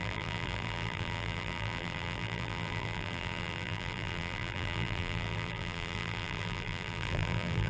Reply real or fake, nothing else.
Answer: fake